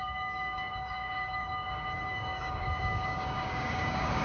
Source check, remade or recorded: remade